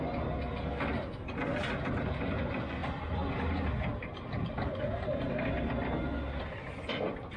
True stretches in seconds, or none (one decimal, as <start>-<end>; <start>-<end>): 0.0-7.4